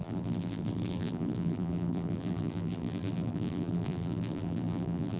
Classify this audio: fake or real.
fake